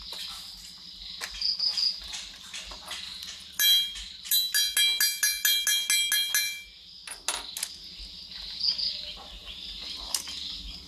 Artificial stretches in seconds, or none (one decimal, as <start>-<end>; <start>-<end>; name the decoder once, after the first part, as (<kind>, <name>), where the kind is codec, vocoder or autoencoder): 1.8-2.5 (vocoder, BigVGAN v2)